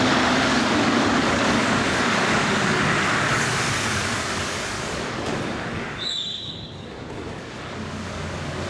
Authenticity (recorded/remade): remade